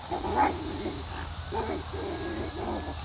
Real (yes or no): yes